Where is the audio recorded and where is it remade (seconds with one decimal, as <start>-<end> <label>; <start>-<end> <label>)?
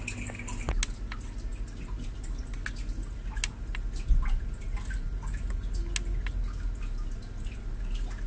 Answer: 0.0-8.3 recorded